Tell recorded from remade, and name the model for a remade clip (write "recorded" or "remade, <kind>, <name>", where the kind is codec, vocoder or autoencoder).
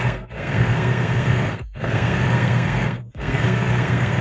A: remade, codec, SNAC